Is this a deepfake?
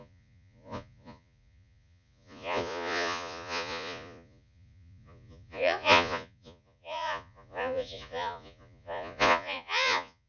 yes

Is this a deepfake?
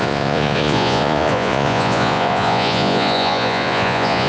yes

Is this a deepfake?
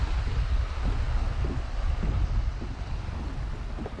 no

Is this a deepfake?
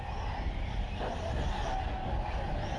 no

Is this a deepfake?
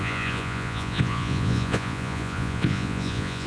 yes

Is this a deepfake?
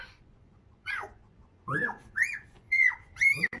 yes